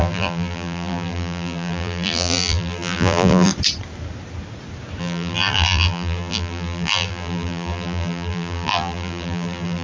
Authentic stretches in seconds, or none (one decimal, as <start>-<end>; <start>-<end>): 3.5-5.0